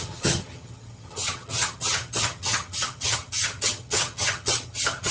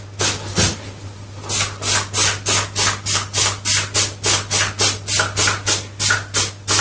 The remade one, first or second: first